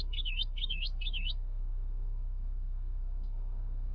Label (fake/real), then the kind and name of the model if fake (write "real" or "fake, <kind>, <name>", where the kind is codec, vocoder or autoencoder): fake, codec, SNAC